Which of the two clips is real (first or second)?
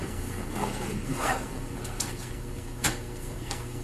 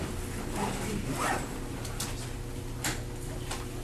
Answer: second